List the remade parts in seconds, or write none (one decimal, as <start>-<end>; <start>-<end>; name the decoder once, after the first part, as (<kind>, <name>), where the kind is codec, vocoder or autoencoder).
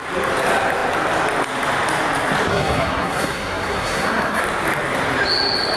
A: 2.5-4.4 (codec, SNAC)